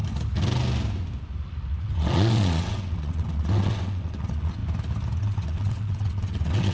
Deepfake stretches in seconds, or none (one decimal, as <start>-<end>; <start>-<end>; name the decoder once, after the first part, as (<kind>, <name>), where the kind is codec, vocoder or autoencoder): 1.8-4.6 (vocoder, WaveNeXt); 5.2-6.7